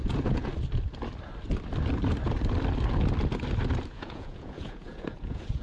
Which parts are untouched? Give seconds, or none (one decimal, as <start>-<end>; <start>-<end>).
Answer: 0.5-3.9

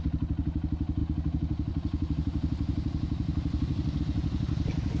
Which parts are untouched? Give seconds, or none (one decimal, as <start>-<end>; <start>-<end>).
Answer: 0.0-5.0

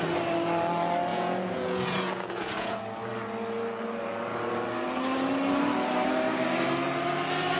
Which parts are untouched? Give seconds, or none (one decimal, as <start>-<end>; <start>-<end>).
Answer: 0.0-1.1; 2.8-7.6